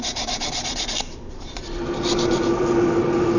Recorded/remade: remade